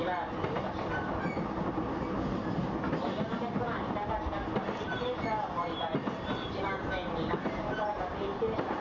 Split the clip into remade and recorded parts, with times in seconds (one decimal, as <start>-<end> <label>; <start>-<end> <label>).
0.0-8.8 recorded